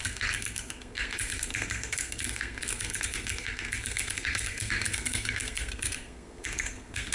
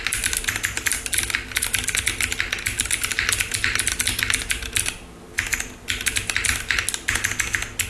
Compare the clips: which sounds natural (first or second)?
second